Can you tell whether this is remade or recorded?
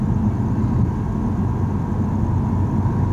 recorded